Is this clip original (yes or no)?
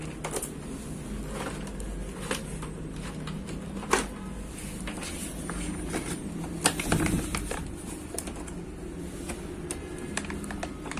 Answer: yes